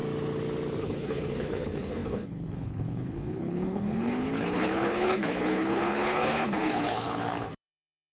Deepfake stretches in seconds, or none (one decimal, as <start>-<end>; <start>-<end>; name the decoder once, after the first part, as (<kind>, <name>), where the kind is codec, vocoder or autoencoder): 0.8-8.1 (codec, HILCodec)